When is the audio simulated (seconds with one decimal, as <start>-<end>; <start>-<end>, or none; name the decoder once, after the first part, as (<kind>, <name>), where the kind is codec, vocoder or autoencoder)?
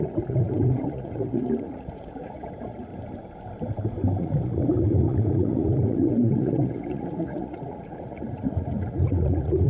0.0-2.9 (vocoder, Vocos); 4.2-9.7